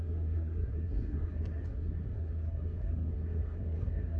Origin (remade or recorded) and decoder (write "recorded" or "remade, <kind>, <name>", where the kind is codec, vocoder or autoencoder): remade, codec, SNAC